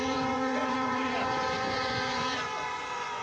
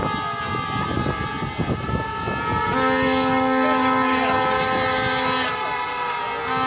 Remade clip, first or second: first